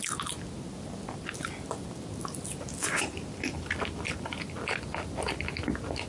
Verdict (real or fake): real